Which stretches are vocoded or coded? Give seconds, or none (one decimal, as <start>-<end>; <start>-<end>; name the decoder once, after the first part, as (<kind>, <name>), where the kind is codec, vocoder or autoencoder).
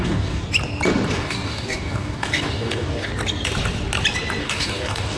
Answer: 0.0-0.4 (codec, DAC); 1.1-3.1; 4.4-5.2